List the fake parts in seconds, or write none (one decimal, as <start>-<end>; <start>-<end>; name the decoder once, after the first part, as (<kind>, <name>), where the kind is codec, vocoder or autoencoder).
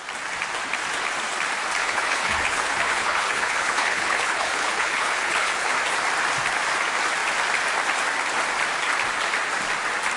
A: 1.8-5.7 (codec, HILCodec)